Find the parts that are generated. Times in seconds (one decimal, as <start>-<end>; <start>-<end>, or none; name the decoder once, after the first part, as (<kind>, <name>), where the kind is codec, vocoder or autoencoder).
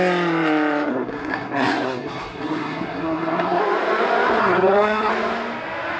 0.9-3.6 (codec, SNAC); 4.4-5.1